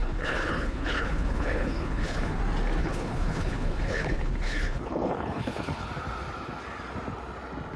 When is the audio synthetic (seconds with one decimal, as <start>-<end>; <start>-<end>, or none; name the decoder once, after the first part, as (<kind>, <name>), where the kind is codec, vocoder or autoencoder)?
0.0-2.4 (codec, HILCodec); 2.8-5.9